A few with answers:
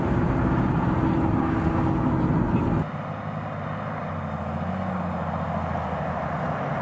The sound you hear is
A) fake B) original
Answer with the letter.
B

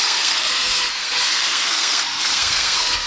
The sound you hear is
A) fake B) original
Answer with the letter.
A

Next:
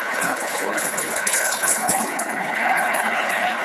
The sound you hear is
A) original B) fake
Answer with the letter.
B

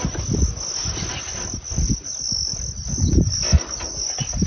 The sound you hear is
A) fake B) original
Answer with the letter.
B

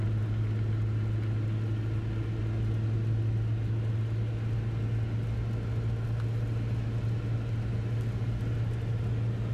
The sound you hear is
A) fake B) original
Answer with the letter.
B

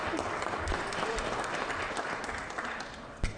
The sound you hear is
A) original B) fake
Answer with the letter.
A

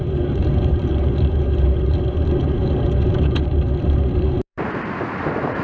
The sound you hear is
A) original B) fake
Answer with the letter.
B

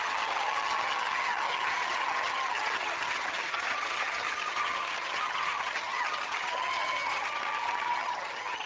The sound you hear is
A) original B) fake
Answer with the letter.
B